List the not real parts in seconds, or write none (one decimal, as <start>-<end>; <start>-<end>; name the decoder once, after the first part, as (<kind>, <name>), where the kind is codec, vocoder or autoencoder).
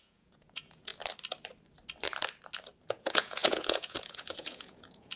0.0-0.9 (vocoder, Vocos); 2.8-5.2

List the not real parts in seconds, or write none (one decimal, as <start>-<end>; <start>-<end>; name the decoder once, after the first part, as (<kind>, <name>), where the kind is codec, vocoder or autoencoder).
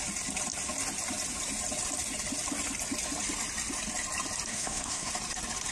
4.5-5.1 (codec, SNAC)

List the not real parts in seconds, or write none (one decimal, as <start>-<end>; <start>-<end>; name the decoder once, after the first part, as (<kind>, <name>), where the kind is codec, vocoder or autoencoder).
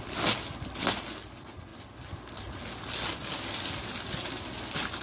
none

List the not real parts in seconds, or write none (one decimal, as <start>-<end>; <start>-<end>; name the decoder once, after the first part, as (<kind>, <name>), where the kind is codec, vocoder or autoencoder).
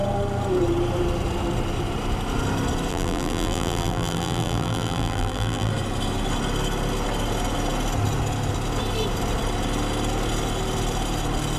2.9-5.7 (vocoder, BigVGAN v2)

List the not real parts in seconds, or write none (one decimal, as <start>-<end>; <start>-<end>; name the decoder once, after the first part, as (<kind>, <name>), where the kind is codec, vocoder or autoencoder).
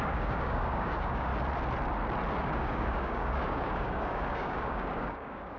0.0-1.3 (codec, DAC); 2.4-5.6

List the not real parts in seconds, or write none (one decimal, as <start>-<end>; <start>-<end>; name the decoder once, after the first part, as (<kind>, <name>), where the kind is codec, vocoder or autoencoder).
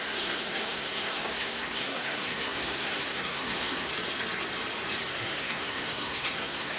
0.0-3.9 (codec, SNAC); 5.0-6.8